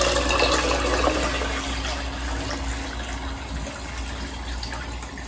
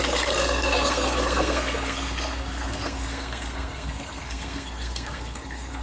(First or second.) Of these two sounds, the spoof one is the second